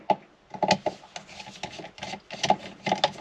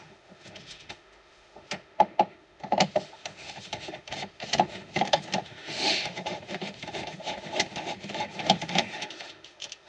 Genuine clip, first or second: first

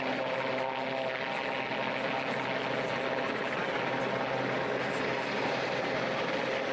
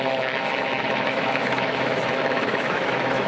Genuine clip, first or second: first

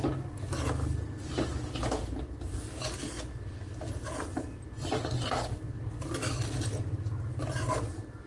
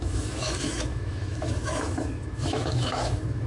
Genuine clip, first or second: first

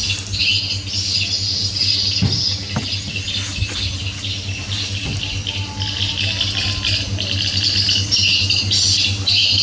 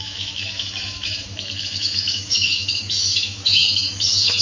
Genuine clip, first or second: first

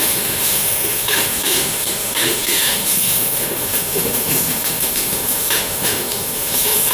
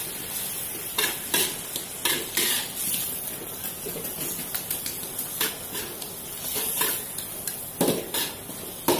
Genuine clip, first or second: second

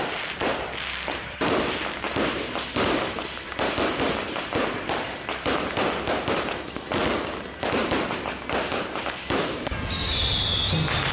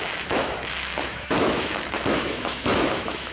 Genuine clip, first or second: first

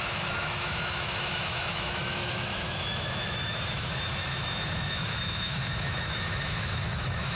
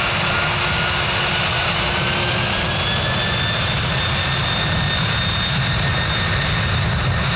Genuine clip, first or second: second